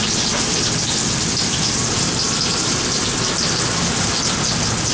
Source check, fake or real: real